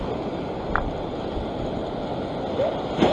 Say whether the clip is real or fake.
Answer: real